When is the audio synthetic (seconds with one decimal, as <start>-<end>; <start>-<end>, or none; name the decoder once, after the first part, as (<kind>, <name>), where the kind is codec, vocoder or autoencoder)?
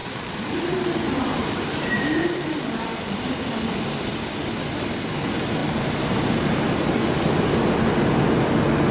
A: 0.0-2.9 (vocoder, BigVGAN v2); 5.6-7.4